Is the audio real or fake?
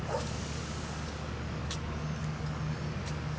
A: fake